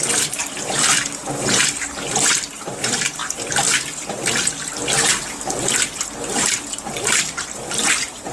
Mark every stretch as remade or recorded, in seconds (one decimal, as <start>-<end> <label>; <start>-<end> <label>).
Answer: 0.0-1.2 remade; 1.2-2.5 recorded; 2.5-8.3 remade